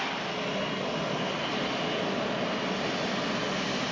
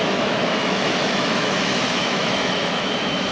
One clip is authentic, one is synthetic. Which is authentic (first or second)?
first